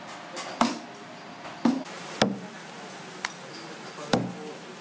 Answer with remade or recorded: recorded